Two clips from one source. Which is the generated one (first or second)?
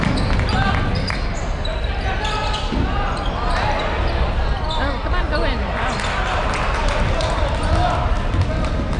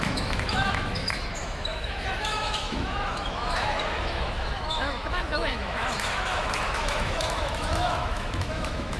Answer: second